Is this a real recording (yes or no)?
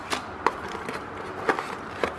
yes